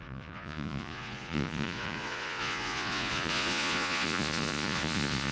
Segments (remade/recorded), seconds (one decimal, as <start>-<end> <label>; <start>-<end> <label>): 0.0-5.3 remade